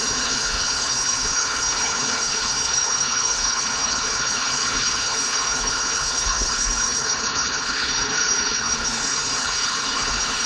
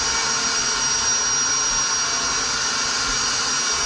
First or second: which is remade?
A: first